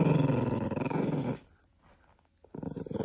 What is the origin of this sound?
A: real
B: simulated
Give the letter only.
A